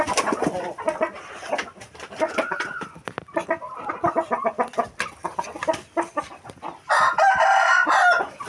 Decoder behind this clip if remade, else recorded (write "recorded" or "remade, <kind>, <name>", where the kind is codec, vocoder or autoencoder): recorded